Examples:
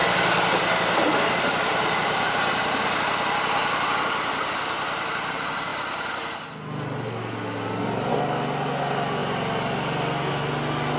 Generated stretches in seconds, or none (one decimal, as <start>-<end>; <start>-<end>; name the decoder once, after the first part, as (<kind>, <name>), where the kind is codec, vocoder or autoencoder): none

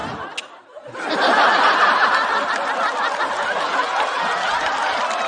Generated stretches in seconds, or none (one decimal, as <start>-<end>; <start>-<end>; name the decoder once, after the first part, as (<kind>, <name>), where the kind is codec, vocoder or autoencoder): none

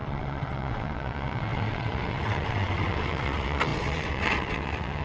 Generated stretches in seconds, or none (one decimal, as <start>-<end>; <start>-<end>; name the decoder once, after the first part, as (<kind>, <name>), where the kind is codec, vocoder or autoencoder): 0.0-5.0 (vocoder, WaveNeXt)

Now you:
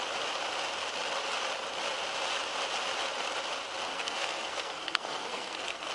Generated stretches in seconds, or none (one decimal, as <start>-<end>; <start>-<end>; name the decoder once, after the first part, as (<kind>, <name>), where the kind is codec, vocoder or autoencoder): 3.9-5.9 (codec, SNAC)